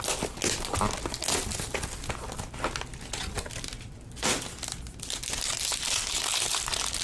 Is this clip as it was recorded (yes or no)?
yes